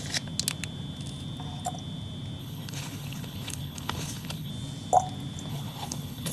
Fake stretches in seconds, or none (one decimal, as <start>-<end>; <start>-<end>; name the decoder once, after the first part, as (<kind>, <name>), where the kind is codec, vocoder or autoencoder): 2.4-4.5 (codec, HILCodec); 5.5-6.3